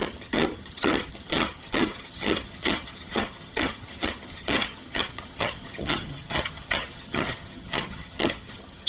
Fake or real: fake